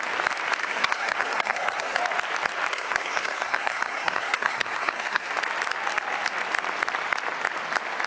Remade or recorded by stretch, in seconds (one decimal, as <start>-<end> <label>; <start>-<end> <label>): 0.0-0.6 recorded; 0.6-2.0 remade; 2.0-2.7 recorded; 2.7-5.3 remade; 5.3-8.1 recorded